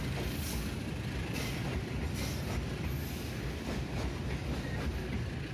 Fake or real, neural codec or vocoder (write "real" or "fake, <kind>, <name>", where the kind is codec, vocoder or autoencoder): real